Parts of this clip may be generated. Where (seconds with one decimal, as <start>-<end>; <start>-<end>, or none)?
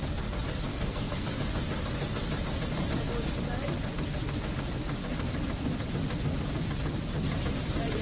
0.7-1.4